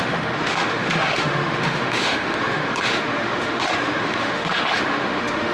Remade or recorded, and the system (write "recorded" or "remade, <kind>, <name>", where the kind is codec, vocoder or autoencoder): remade, autoencoder, DAC-VAE